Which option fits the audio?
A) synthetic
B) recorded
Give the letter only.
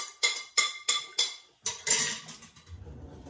B